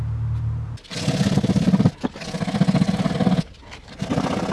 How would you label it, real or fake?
real